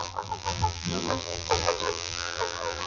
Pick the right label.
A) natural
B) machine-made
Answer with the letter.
B